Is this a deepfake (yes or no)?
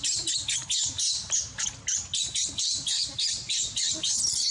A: no